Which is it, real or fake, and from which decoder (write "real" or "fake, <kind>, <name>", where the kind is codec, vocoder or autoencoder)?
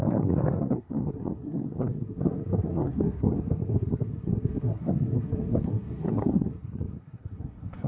fake, codec, SNAC